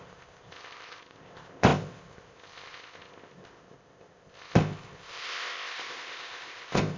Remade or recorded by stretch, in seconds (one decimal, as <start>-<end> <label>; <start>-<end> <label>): 0.0-7.0 remade